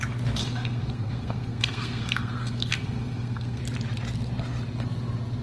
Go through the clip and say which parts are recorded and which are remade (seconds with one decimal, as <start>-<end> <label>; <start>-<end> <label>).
0.0-0.4 recorded; 0.4-3.6 remade; 3.6-5.4 recorded